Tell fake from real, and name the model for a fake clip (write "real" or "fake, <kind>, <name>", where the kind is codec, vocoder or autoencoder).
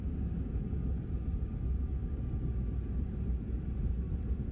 real